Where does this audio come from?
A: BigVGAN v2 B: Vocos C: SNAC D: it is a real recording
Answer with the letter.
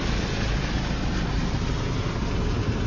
D